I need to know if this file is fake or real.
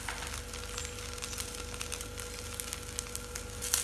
real